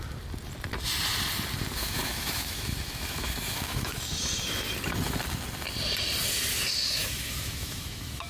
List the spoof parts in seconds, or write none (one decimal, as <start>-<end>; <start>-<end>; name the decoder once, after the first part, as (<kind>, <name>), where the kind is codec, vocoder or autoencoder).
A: 1.8-4.0 (autoencoder, DAC-VAE); 7.0-8.3